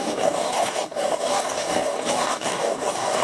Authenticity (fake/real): fake